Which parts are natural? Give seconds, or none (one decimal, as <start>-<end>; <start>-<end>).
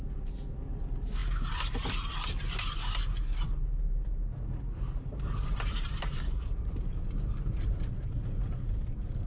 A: none